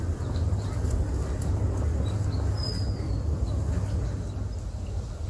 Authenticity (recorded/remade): recorded